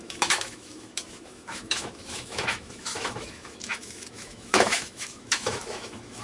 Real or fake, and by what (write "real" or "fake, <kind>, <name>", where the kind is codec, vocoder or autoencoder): fake, autoencoder, DAC-VAE